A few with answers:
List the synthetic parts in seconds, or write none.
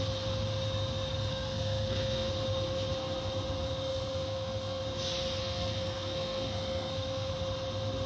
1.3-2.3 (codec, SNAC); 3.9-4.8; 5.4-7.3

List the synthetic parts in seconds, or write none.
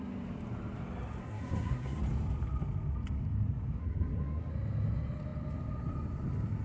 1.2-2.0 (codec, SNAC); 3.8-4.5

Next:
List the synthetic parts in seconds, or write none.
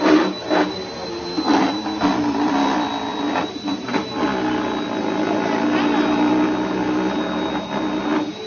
none